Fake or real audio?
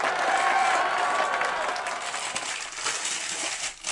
real